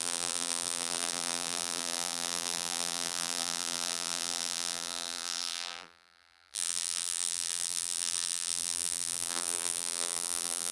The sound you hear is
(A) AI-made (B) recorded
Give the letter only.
A